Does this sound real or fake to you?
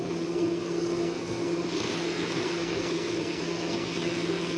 fake